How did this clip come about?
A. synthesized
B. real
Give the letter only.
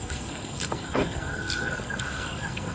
A